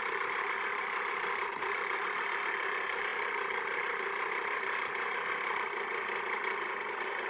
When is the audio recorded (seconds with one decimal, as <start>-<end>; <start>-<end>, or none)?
3.1-7.3